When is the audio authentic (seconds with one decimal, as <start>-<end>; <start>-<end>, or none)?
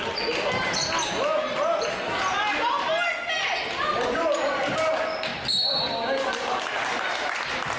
0.0-7.8